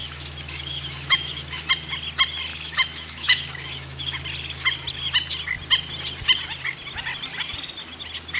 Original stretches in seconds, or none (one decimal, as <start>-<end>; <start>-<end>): 1.7-2.5; 4.2-8.4